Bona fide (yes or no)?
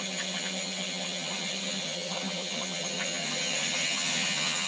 no